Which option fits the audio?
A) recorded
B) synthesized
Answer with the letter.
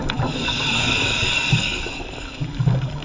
B